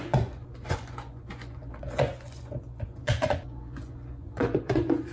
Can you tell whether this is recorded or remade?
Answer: remade